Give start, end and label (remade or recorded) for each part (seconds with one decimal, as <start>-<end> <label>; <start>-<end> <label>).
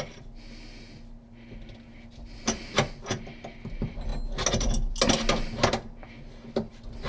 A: 0.0-7.1 recorded